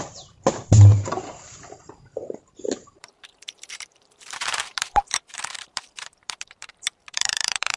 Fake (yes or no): yes